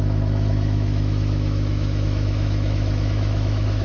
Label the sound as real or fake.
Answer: fake